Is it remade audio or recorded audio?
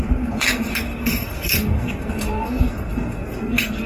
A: remade